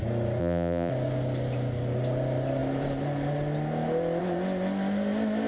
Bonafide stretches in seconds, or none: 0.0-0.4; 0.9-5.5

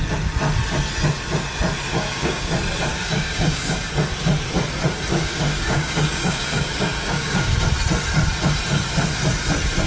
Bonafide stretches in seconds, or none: 0.0-1.9; 2.5-2.9; 3.9-5.1; 7.5-9.9

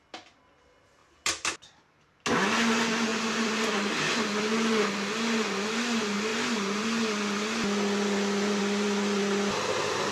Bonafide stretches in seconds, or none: 0.0-1.0; 2.1-3.1; 3.7-10.1